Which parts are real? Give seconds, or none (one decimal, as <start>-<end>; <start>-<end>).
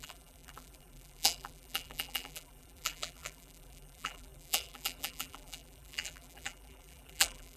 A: none